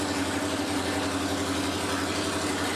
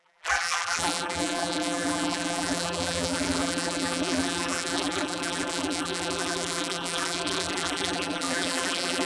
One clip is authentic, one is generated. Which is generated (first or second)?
second